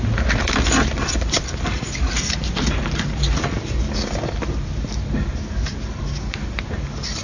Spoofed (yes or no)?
no